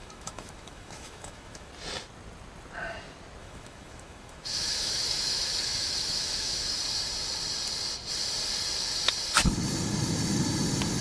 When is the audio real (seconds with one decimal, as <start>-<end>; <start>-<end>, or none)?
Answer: 1.7-3.4; 6.8-11.0